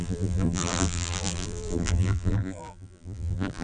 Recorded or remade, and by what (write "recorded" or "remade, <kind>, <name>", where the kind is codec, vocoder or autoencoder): remade, vocoder, BigVGAN v2